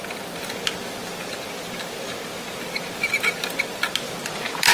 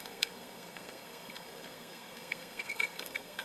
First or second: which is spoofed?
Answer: second